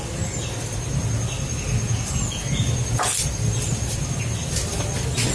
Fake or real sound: fake